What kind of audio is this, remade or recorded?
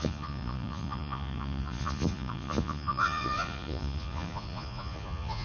remade